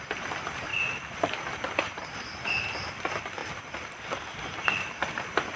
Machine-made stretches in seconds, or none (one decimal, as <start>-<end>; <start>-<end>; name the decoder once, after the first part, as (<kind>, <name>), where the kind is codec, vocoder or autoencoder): 0.0-3.4 (vocoder, BigVGAN v2); 4.0-5.6

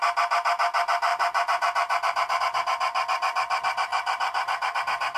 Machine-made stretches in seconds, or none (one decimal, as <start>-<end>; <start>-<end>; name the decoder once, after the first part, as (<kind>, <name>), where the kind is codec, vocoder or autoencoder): 1.1-2.4 (vocoder, BigVGAN v2); 3.9-4.8

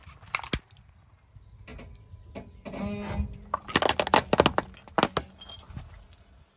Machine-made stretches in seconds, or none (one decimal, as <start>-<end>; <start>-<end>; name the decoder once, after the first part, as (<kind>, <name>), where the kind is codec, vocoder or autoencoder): none

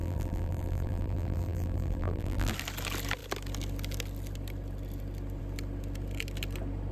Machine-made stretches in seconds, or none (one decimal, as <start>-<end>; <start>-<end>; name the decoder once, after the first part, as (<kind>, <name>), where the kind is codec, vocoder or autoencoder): 0.0-2.5 (vocoder, BigVGAN v2)

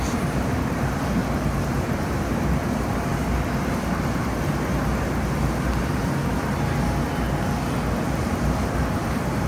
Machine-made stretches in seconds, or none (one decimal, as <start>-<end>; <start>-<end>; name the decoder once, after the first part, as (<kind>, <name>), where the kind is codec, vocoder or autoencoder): 0.0-1.2 (vocoder, BigVGAN v2); 1.9-3.1; 5.8-6.2; 8.0-9.5

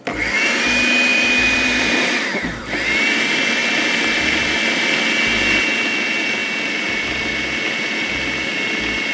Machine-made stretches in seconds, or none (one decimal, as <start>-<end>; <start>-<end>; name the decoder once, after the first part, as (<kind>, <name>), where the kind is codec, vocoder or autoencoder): 1.1-2.1 (vocoder, BigVGAN v2)